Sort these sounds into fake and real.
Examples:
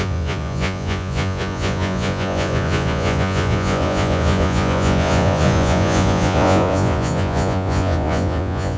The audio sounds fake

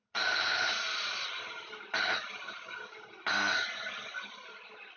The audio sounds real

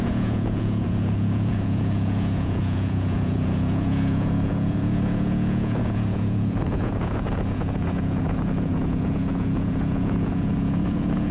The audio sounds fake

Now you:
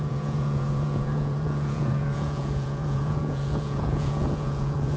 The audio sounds fake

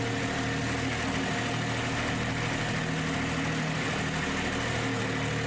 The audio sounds real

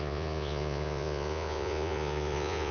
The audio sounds fake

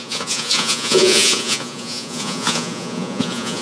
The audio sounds fake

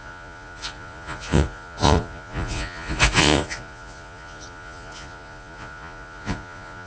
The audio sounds fake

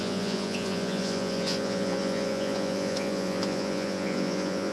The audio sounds fake